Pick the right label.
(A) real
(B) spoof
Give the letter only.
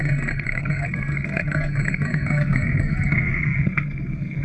B